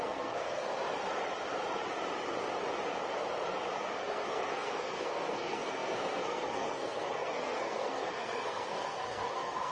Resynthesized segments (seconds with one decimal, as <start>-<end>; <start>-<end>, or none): 0.0-0.7; 3.9-9.7